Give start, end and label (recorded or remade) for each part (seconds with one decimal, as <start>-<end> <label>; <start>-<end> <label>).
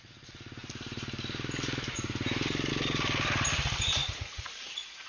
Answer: 0.0-4.0 recorded; 4.0-5.1 remade